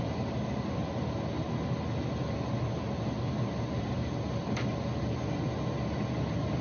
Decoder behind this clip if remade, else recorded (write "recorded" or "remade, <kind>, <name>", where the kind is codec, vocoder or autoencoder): recorded